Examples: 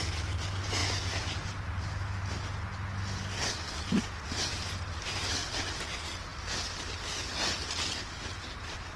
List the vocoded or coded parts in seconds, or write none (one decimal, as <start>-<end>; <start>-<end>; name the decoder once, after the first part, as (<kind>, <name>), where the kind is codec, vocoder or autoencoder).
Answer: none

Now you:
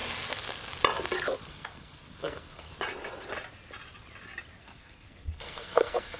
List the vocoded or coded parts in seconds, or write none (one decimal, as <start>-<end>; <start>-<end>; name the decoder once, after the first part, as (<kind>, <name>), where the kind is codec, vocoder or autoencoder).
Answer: 1.5-2.7 (codec, SNAC); 4.6-6.2

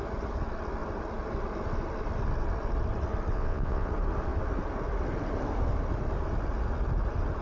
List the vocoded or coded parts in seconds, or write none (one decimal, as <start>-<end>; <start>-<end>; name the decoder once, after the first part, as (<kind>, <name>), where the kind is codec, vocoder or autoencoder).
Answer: 3.3-3.9 (vocoder, WaveNeXt)

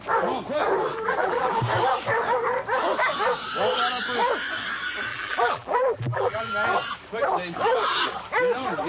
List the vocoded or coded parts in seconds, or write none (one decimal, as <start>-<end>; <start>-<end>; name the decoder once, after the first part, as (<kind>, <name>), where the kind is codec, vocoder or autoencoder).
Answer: 0.9-1.6 (vocoder, BigVGAN v2); 5.1-6.5

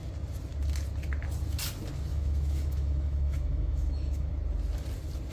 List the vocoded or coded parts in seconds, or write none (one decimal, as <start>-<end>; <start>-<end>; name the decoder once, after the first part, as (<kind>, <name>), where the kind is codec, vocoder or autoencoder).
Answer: 2.1-4.3 (autoencoder, DAC-VAE)

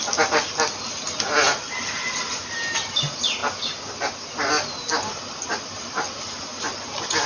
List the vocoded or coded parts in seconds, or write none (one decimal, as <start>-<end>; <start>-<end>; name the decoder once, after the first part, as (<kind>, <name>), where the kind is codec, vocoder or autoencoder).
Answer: none